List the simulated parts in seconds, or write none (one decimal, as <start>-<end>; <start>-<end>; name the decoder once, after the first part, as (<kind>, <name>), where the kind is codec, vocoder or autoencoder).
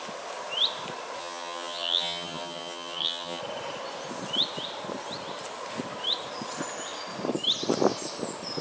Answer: 1.2-3.4 (vocoder, HiFi-GAN)